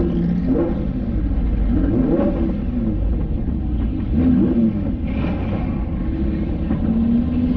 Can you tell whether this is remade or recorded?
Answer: recorded